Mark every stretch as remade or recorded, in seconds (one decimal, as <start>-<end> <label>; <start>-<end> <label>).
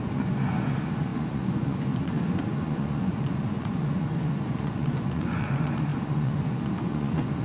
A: 0.0-7.4 remade